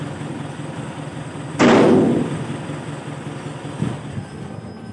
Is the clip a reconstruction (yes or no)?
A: no